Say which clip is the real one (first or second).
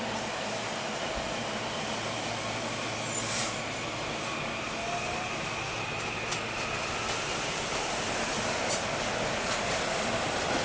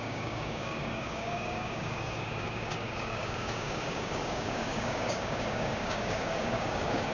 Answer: first